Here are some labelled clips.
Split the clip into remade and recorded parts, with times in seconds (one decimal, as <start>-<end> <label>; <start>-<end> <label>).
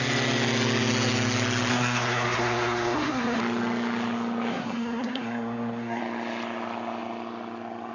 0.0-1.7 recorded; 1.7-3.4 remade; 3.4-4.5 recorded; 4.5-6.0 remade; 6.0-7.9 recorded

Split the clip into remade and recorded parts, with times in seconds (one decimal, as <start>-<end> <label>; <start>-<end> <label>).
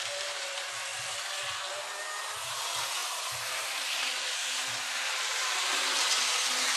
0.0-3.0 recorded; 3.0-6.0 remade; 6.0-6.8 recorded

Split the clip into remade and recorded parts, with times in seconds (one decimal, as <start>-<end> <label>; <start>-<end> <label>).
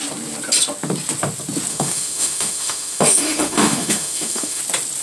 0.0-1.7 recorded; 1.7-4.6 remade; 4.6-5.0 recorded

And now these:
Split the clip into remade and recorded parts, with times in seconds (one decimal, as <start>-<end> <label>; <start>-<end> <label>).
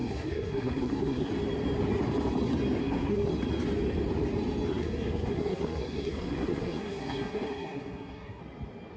0.0-1.3 remade; 1.3-2.8 recorded; 2.8-3.3 remade; 3.3-4.7 recorded; 4.7-8.4 remade; 8.4-9.0 recorded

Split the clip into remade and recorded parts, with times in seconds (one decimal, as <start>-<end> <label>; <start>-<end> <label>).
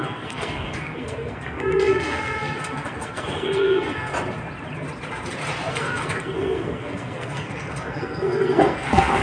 0.0-4.1 remade; 4.1-5.7 recorded; 5.7-9.2 remade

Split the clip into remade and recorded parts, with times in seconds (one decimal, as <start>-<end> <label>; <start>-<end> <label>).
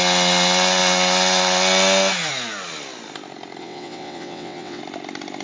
0.0-3.6 recorded; 3.6-4.8 remade; 4.8-5.4 recorded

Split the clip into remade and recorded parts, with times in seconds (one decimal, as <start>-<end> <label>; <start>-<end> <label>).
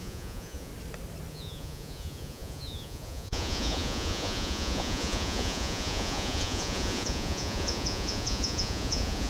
0.0-0.7 remade; 0.7-1.3 recorded; 1.3-9.3 remade